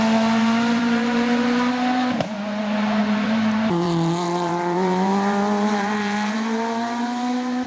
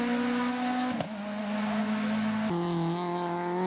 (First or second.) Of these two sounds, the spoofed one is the first